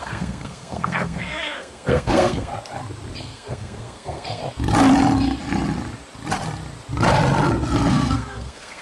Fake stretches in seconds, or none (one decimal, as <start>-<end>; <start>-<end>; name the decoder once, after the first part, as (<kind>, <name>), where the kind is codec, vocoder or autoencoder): 0.0-2.5 (codec, SNAC); 3.2-4.4; 7.9-8.8